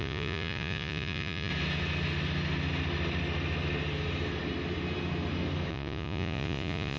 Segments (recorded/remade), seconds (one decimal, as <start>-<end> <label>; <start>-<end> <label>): 0.0-1.5 remade; 1.5-5.7 recorded; 5.7-7.0 remade